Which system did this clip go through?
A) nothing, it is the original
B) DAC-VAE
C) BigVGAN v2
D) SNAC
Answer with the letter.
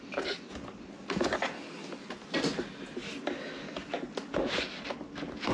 A